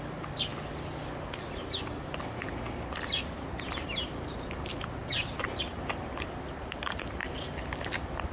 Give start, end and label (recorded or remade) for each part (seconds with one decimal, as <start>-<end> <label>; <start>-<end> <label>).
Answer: 0.0-0.5 remade; 0.5-1.7 recorded; 1.7-2.5 remade; 2.5-4.0 recorded; 4.0-8.3 remade